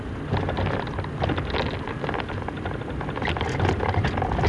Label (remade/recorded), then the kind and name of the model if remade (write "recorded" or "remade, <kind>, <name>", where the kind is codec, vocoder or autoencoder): recorded